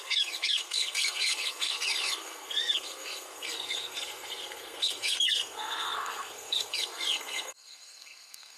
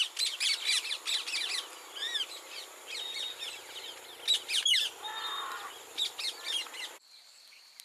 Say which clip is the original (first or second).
second